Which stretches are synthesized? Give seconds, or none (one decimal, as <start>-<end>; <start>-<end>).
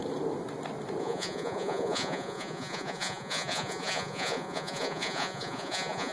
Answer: 1.0-6.1